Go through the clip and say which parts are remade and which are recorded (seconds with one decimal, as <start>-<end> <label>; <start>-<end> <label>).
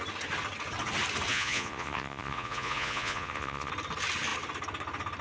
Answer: 0.0-1.3 recorded; 1.3-3.7 remade; 3.7-5.2 recorded